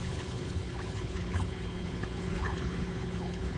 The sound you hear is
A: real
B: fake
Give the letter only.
B